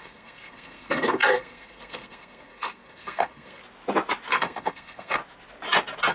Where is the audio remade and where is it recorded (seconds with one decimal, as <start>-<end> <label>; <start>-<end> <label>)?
0.0-3.6 remade; 3.6-4.3 recorded; 4.3-5.2 remade; 5.2-6.1 recorded